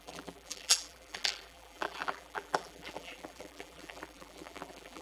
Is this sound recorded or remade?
remade